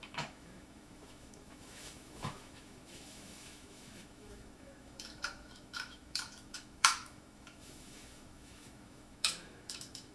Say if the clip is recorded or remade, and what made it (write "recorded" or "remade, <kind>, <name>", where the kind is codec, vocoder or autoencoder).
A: remade, autoencoder, DAC-VAE